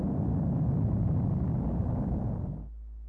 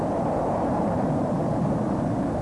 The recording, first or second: first